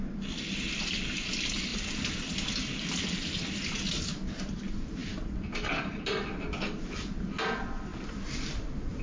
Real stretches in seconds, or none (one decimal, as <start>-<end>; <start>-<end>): 0.0-9.0